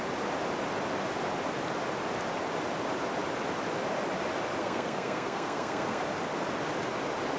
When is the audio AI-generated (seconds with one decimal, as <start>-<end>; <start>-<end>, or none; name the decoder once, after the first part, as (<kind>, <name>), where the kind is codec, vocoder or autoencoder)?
4.6-6.0 (codec, SNAC)